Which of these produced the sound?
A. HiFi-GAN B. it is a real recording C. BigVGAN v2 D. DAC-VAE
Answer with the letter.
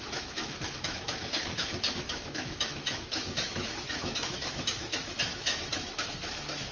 D